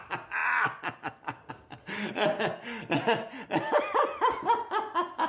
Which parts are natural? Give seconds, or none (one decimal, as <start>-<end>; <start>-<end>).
0.0-0.4; 1.5-5.3